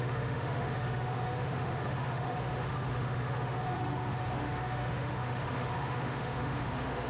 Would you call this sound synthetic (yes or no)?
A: yes